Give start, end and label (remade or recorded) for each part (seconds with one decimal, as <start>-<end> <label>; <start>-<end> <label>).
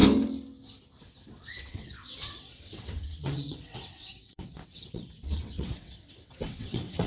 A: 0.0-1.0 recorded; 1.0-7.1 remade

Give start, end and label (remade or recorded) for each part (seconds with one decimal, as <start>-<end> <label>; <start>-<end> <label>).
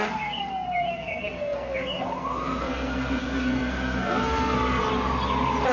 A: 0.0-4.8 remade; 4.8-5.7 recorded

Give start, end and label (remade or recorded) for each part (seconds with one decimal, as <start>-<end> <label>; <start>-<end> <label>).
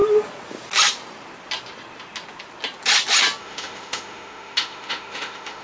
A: 0.0-3.4 recorded; 3.4-5.6 remade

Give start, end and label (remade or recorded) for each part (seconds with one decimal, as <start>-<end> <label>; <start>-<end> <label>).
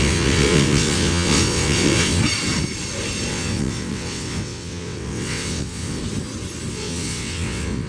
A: 0.0-2.2 remade; 2.2-3.3 recorded; 3.3-6.0 remade; 6.0-6.7 recorded; 6.7-7.9 remade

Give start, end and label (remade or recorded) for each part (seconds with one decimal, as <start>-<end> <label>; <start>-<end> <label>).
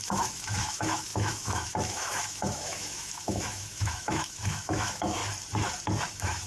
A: 0.0-5.2 remade; 5.2-6.1 recorded; 6.1-6.5 remade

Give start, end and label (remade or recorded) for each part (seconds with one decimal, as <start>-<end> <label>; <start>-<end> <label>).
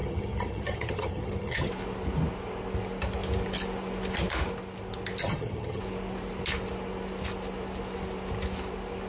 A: 0.0-1.7 remade; 1.7-5.2 recorded; 5.2-5.8 remade; 5.8-9.1 recorded